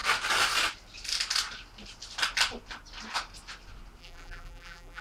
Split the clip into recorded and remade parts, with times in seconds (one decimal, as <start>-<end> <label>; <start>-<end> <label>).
0.0-4.0 recorded; 4.0-5.0 remade